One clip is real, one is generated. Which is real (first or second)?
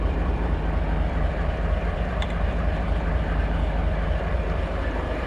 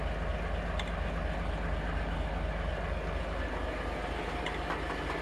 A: second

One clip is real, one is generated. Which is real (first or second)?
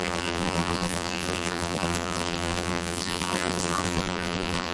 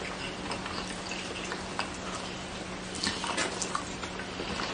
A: second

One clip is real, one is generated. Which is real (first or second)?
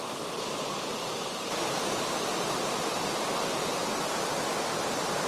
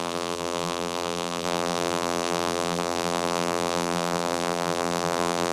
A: first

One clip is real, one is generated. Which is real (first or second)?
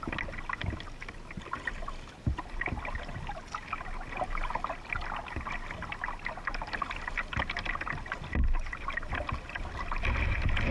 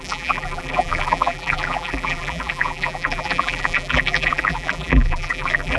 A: first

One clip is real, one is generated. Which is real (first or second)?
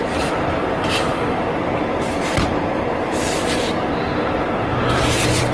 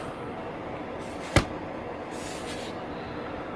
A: second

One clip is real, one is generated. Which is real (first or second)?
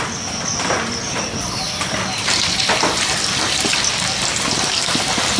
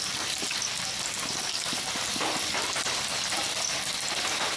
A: second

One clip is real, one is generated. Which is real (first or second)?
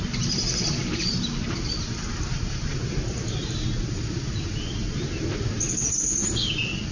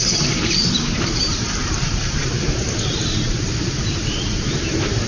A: first